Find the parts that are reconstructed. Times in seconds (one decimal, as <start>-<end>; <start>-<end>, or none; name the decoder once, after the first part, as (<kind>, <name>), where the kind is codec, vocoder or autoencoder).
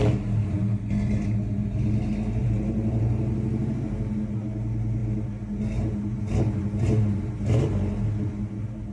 2.4-3.8 (vocoder, BigVGAN v2)